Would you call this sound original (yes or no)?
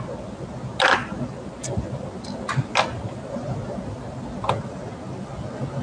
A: yes